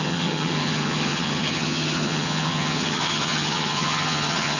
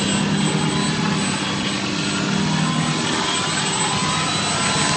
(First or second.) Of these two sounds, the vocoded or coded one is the first